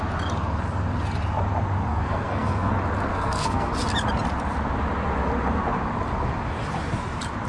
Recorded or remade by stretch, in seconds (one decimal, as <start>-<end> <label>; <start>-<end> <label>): 0.0-1.9 recorded; 1.9-2.7 remade; 2.7-3.1 recorded; 3.1-3.7 remade; 3.7-7.5 recorded